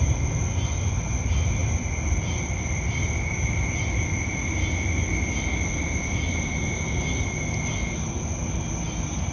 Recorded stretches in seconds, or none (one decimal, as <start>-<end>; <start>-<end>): 0.0-9.3